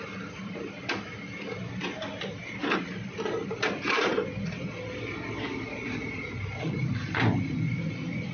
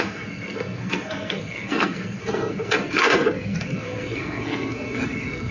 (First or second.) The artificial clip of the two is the second